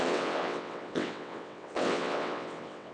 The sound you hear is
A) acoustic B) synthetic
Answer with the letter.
B